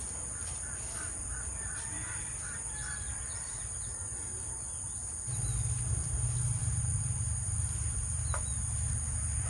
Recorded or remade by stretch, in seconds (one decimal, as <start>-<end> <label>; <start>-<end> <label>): 0.0-6.6 recorded; 6.6-8.5 remade; 8.5-9.5 recorded